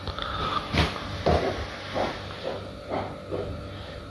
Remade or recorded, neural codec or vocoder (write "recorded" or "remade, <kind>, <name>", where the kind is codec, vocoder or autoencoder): recorded